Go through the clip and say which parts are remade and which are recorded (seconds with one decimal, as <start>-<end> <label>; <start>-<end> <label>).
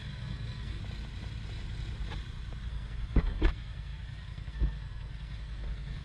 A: 0.0-0.8 remade; 0.8-2.7 recorded; 2.7-6.0 remade